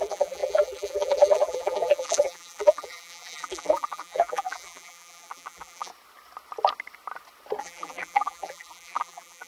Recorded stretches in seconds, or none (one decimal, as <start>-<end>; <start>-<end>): 5.9-7.6